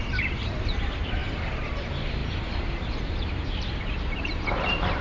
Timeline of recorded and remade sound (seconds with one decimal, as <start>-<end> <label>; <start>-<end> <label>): 0.0-2.2 remade; 2.2-2.8 recorded; 2.8-5.0 remade

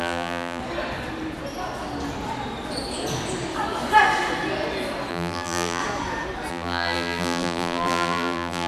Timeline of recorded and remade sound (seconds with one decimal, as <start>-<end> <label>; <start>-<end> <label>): 0.0-0.6 remade; 0.6-5.1 recorded; 5.1-5.8 remade; 5.8-6.5 recorded; 6.5-8.7 remade

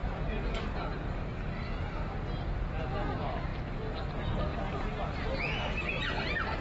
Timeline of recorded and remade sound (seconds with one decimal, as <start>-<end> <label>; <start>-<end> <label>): 0.0-0.8 remade; 0.8-4.5 recorded; 4.5-5.9 remade; 5.9-6.6 recorded

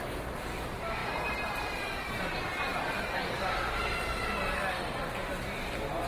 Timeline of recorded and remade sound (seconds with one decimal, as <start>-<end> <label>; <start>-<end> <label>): 0.0-1.0 recorded; 1.0-2.1 remade; 2.1-2.7 recorded; 2.7-4.2 remade; 4.2-6.1 recorded

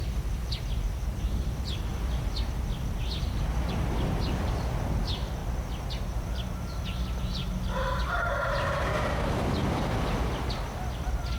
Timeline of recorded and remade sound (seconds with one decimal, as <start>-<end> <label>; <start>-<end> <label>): 0.0-11.4 recorded

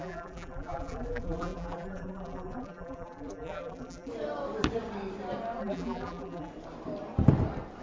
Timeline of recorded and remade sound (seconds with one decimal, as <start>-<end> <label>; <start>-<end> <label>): 0.0-4.1 remade; 4.1-5.6 recorded; 5.6-6.5 remade; 6.5-7.8 recorded

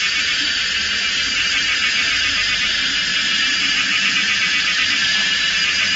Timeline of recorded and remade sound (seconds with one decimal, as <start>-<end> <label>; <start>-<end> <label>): 0.0-6.0 remade

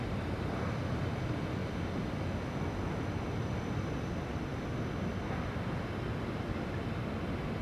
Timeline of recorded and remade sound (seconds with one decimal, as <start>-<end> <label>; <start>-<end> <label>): 0.0-1.6 remade; 1.6-3.4 recorded; 3.4-4.5 remade; 4.5-6.8 recorded; 6.8-7.6 remade